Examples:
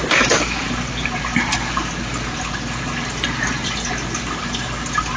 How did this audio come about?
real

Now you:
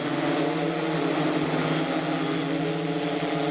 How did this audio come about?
real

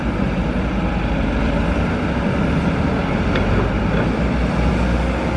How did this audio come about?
real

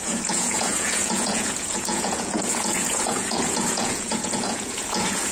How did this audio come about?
fake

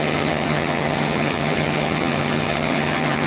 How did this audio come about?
fake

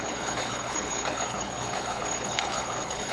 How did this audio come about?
fake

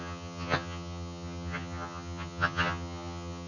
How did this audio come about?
fake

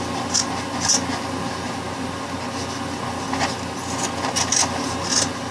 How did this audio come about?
real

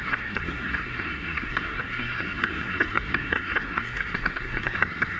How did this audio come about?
fake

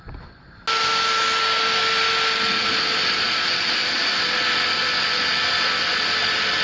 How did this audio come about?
real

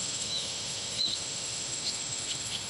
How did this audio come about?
fake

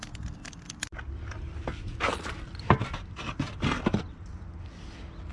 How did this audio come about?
real